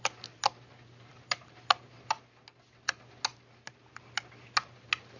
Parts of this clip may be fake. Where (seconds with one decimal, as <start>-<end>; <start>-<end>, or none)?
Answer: none